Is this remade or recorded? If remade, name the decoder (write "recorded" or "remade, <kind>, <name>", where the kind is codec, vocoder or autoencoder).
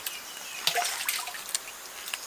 recorded